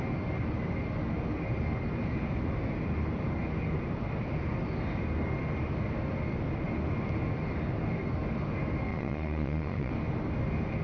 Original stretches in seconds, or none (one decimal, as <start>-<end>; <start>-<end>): 0.0-8.9; 9.9-10.8